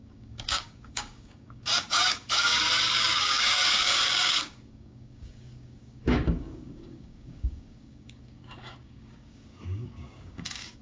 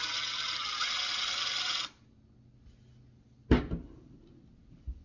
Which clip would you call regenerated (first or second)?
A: first